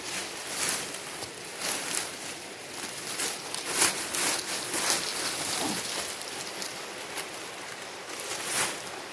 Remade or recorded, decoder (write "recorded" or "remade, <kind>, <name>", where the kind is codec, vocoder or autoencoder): recorded